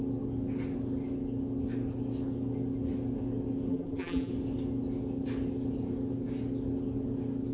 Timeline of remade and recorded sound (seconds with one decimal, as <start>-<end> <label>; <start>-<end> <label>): 0.0-3.7 recorded; 3.7-4.3 remade; 4.3-7.5 recorded